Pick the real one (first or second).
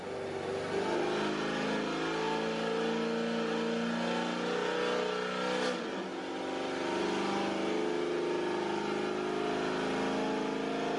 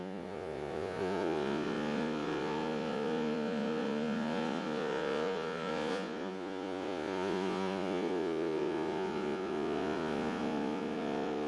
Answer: first